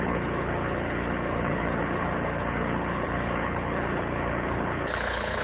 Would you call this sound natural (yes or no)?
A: no